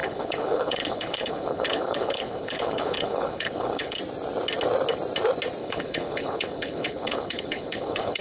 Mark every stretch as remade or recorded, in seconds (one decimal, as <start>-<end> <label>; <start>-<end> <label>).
0.0-4.0 remade; 4.0-5.6 recorded; 5.6-8.2 remade